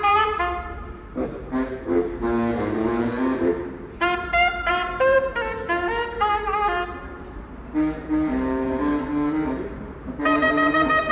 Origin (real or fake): fake